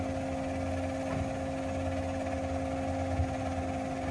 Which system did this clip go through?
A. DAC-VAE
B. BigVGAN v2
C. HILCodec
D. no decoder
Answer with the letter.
D